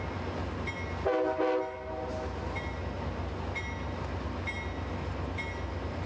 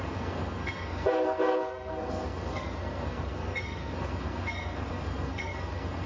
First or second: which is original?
first